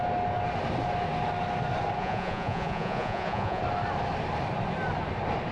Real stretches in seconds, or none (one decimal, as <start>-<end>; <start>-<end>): 0.0-2.0; 3.6-5.5